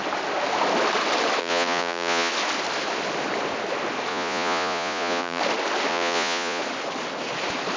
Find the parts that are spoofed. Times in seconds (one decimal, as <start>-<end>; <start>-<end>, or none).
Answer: 1.4-2.3; 4.1-5.4; 5.9-6.6